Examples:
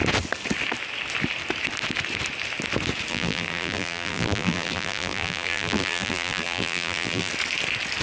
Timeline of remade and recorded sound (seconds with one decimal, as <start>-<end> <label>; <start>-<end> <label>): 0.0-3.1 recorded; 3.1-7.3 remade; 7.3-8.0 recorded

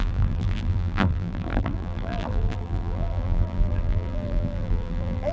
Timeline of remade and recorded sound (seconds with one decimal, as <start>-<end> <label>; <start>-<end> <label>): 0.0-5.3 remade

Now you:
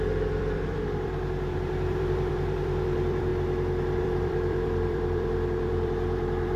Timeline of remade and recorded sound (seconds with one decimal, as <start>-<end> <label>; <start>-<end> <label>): 0.0-3.3 remade; 3.3-4.0 recorded; 4.0-6.6 remade

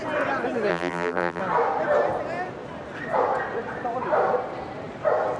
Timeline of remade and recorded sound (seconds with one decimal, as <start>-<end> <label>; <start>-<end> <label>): 0.0-0.7 recorded; 0.7-1.4 remade; 1.4-5.4 recorded

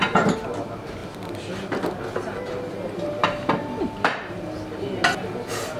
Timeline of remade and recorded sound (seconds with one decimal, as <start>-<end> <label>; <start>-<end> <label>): 0.0-5.8 recorded